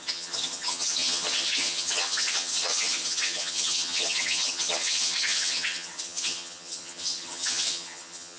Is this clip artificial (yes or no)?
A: yes